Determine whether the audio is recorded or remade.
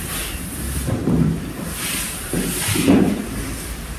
recorded